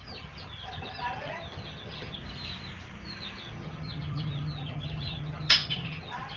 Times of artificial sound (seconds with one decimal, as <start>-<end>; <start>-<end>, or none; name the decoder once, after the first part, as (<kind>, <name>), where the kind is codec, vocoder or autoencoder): 0.0-2.2 (vocoder, HiFi-GAN); 3.1-6.4